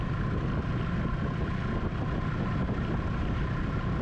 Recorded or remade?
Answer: recorded